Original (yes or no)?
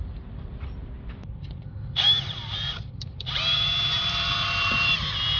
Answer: no